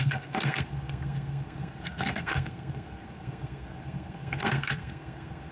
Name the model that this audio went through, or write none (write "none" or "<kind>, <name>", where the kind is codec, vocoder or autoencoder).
codec, SNAC